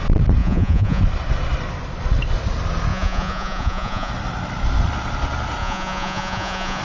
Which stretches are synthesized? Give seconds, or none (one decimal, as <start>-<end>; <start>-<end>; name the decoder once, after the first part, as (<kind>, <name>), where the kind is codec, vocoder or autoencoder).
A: 0.4-1.0 (vocoder, Vocos); 2.9-4.1; 5.6-6.8